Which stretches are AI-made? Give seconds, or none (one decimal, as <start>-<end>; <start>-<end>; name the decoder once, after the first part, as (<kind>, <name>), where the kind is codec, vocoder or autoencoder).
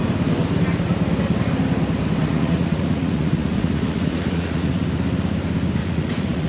2.2-4.8 (vocoder, Vocos); 5.8-6.5